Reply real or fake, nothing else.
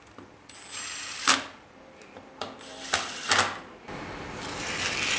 real